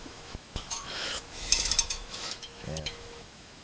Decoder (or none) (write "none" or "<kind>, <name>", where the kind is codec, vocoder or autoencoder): autoencoder, DAC-VAE